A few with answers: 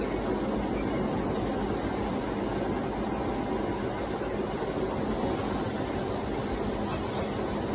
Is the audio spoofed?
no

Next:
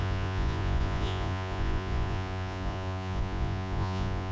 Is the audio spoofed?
yes